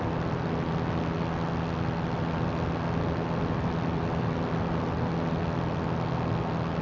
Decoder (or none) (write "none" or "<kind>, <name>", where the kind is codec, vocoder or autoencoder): none